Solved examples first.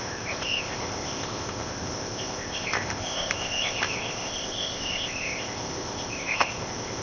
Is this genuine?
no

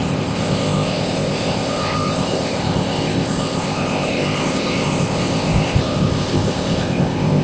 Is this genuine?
no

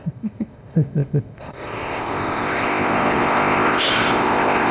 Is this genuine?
no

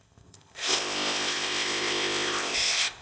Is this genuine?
no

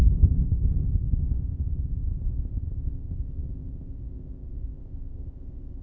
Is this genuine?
no